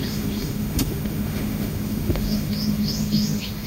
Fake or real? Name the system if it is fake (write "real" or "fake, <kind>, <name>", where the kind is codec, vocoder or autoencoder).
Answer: fake, autoencoder, DAC-VAE